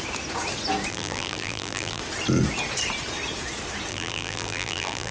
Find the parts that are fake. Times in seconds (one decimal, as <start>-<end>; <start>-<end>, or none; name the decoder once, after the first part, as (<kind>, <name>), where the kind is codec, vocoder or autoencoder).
0.9-2.0 (vocoder, BigVGAN v2); 3.9-5.1